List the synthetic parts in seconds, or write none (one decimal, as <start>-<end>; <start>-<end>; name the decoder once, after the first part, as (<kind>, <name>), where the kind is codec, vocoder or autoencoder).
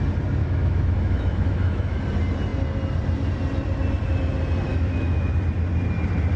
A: 0.4-2.0 (autoencoder, DAC-VAE); 4.7-5.3